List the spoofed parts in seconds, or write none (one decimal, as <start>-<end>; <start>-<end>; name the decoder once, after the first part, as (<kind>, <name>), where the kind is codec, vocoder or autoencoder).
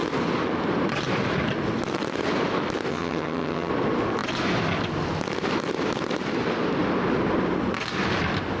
2.9-3.7 (vocoder, HiFi-GAN)